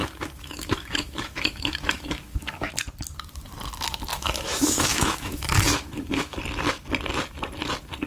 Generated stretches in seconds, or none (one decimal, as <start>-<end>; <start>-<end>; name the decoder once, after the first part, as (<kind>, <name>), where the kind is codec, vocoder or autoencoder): 0.0-2.7 (autoencoder, DAC-VAE); 4.1-6.4

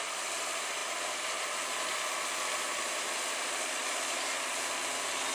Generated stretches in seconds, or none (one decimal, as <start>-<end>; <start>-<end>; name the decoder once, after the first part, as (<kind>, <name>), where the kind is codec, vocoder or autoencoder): none

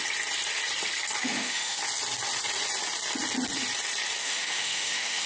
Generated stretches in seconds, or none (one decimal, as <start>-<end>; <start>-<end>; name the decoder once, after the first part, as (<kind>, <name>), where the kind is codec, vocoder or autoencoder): 1.2-1.8 (autoencoder, DAC-VAE); 4.2-5.3

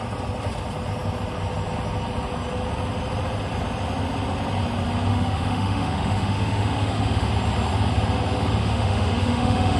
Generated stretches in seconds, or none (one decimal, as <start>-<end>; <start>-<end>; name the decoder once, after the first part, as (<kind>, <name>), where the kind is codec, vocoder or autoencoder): 5.1-7.3 (autoencoder, DAC-VAE); 8.6-9.8